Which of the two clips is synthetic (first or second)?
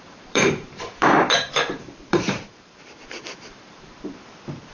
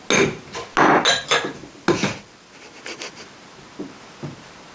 first